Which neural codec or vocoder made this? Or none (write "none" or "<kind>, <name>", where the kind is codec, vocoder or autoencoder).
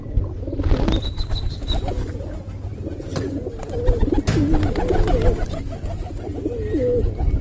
none